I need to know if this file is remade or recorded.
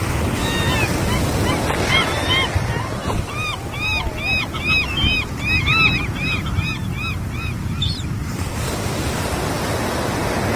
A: recorded